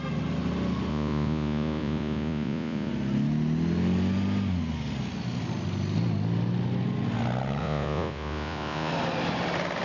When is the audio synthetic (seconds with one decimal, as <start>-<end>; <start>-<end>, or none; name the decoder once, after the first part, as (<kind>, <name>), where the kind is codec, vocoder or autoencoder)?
0.9-2.9 (vocoder, Vocos); 7.6-8.9